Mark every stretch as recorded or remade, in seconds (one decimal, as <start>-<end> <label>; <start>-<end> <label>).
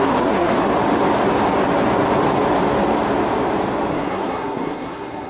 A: 0.0-0.7 remade; 0.7-3.9 recorded; 3.9-5.3 remade